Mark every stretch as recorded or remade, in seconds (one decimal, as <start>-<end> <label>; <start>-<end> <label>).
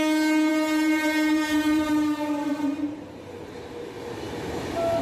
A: 0.0-0.5 recorded; 0.5-3.5 remade; 3.5-5.0 recorded